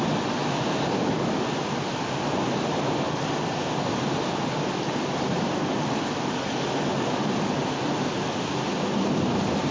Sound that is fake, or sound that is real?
real